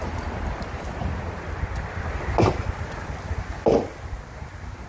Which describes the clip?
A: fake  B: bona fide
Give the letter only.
B